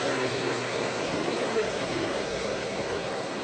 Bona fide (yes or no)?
no